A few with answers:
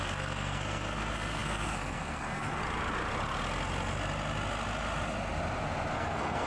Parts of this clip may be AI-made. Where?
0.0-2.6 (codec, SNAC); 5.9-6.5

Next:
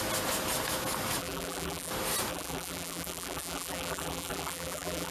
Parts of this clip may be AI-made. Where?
1.2-1.9 (vocoder, BigVGAN v2); 2.3-5.1

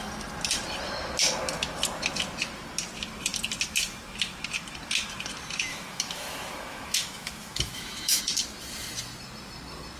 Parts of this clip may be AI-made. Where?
5.7-8.2 (autoencoder, DAC-VAE)

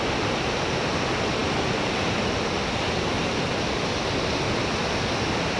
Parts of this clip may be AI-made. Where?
none

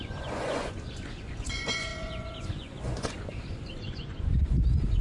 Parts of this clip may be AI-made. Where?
0.0-5.0 (vocoder, Vocos)

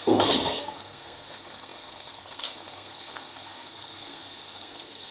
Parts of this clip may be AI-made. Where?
0.0-5.1 (codec, SNAC)